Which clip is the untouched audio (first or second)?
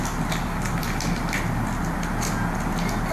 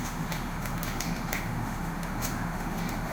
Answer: first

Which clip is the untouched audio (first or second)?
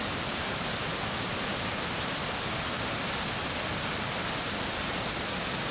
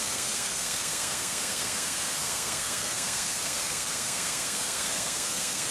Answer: first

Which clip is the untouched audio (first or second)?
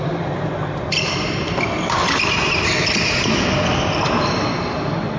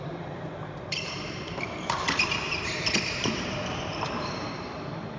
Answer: first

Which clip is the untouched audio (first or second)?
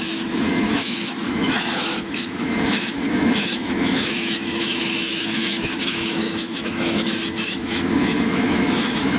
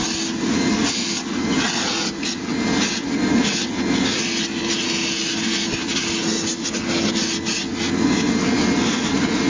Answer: second